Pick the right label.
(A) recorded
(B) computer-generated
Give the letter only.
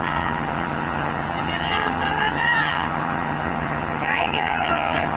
B